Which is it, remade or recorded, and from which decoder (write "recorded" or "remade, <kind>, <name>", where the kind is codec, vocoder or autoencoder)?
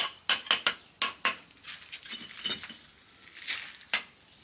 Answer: recorded